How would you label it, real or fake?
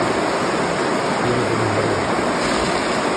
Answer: real